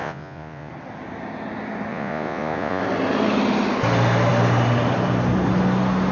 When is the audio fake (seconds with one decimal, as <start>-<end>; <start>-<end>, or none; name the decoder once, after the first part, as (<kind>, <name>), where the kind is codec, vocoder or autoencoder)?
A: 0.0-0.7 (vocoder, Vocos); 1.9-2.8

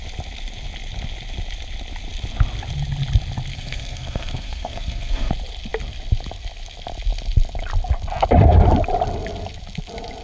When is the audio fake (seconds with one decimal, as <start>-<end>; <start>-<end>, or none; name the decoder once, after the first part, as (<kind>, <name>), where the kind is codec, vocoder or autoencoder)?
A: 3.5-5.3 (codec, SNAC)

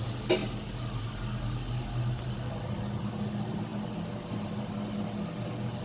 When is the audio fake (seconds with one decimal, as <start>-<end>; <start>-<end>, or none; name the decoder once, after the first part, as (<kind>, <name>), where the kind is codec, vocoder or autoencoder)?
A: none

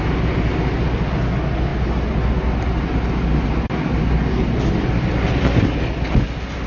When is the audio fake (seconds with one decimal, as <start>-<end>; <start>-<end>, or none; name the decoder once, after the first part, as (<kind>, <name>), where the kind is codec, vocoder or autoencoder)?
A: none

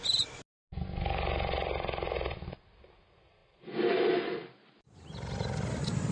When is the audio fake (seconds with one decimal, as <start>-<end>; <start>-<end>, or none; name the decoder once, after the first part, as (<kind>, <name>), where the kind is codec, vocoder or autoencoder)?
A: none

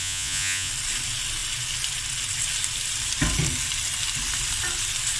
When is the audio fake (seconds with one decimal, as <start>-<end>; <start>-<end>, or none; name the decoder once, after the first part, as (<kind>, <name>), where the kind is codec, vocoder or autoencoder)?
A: 0.0-0.7 (vocoder, Vocos)